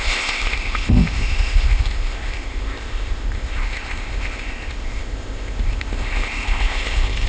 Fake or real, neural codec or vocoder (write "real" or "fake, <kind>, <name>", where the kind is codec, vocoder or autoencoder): fake, codec, ZipCodec